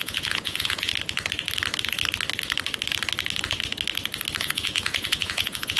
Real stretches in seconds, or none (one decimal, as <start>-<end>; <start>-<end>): 0.9-4.4